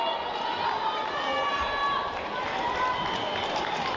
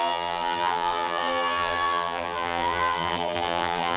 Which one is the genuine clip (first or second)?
first